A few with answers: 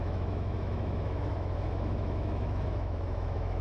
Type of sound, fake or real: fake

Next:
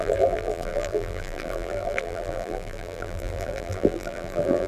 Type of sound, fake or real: fake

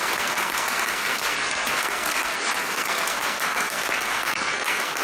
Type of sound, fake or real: fake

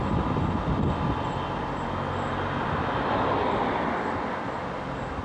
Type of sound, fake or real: real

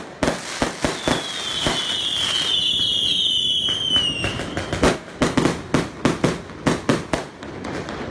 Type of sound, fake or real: real